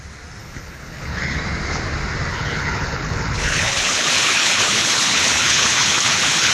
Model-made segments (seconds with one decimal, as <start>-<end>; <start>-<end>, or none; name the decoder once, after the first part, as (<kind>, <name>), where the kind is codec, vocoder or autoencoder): 0.4-1.4 (codec, HILCodec); 2.3-6.5